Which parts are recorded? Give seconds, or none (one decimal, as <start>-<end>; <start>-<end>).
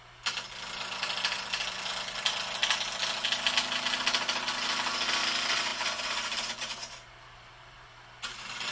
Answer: 0.0-5.7; 7.9-8.7